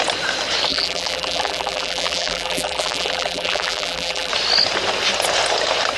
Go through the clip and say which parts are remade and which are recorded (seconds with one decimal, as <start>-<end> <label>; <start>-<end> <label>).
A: 0.0-0.7 recorded; 0.7-4.3 remade; 4.3-6.0 recorded